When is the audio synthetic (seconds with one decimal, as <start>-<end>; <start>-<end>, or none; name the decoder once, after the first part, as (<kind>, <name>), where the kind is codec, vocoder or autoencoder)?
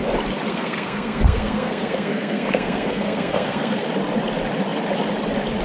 0.5-3.8 (codec, SNAC)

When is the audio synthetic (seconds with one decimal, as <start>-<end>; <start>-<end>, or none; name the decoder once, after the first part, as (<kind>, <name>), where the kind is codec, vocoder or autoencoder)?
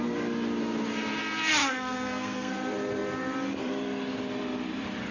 1.6-2.5 (codec, SNAC)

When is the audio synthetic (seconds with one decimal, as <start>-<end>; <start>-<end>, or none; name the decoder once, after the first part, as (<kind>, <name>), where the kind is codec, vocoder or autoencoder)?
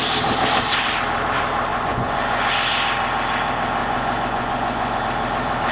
1.7-2.5 (vocoder, Vocos); 3.8-5.0